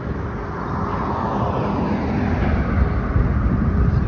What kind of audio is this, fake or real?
real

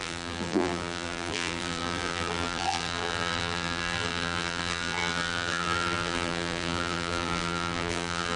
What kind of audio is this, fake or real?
fake